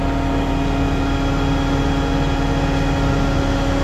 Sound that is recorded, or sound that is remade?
recorded